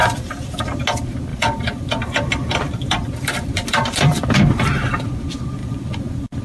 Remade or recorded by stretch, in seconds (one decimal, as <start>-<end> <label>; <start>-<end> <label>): 0.0-0.6 remade; 0.6-1.3 recorded; 1.3-5.1 remade; 5.1-5.6 recorded; 5.6-6.4 remade